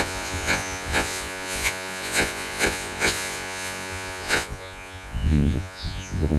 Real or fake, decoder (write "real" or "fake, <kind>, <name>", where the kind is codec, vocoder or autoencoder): fake, vocoder, Vocos